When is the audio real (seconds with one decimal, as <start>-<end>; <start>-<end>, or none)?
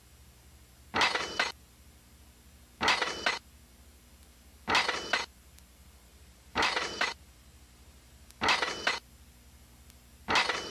0.0-6.1; 8.4-10.7